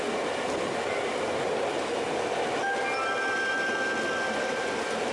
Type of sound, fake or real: real